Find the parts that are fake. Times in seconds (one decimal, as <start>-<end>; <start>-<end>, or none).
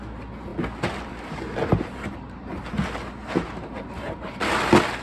1.7-2.6; 3.2-4.4